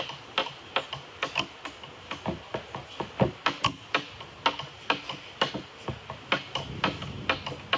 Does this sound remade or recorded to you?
recorded